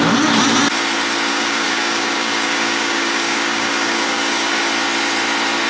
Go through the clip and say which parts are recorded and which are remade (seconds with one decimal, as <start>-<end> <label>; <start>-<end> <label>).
0.0-1.3 recorded; 1.3-4.7 remade; 4.7-5.7 recorded